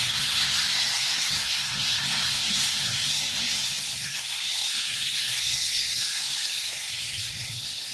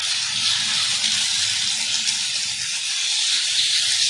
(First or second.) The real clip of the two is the second